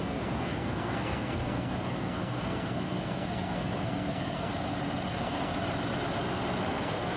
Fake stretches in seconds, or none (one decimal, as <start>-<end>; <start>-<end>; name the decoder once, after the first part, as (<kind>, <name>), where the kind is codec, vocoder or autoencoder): 0.0-4.5 (codec, SNAC); 5.1-5.5; 6.6-7.2